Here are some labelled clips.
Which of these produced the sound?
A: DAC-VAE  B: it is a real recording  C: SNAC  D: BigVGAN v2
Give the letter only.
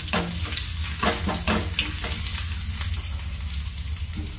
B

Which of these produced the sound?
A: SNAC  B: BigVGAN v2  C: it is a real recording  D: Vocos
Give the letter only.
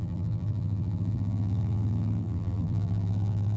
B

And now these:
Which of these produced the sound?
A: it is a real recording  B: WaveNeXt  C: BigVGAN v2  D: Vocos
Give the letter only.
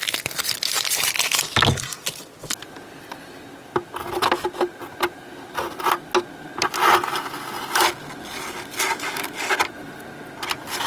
A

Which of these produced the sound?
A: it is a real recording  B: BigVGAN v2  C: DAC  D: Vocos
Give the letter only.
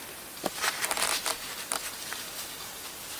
A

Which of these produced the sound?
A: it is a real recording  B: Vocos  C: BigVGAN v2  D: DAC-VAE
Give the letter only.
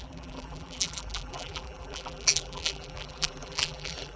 C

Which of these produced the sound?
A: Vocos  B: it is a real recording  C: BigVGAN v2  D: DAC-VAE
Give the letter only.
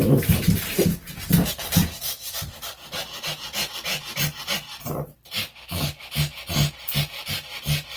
B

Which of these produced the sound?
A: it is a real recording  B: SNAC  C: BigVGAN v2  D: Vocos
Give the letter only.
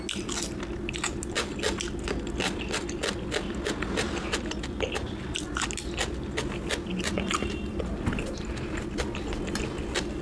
A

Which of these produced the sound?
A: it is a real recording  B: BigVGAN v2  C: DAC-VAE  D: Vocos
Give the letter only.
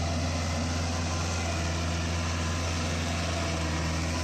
A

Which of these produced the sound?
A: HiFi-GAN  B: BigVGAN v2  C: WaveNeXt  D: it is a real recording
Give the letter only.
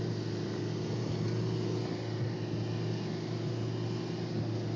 D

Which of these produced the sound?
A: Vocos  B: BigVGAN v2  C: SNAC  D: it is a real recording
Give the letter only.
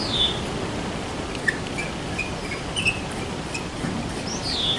D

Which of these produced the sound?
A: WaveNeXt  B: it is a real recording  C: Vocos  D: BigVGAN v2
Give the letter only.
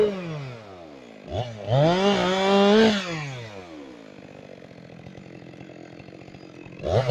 B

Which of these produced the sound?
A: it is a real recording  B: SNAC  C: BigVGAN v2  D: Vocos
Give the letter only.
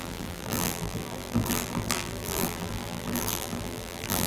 C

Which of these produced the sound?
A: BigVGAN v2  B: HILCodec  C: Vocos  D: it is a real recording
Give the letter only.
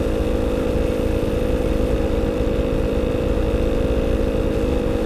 D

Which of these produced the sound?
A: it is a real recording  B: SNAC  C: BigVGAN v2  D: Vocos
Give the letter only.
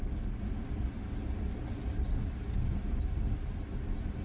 A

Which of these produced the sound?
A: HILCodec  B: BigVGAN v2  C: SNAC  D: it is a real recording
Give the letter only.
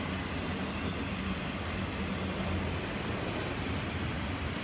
D